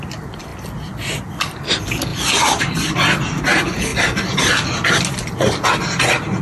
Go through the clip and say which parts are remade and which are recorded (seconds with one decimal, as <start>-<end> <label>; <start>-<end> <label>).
0.0-2.1 recorded; 2.1-2.6 remade; 2.6-6.4 recorded